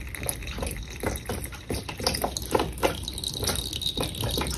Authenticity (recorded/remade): recorded